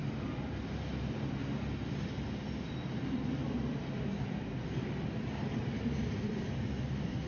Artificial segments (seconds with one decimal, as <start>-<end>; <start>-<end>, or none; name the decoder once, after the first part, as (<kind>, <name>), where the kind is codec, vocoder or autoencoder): none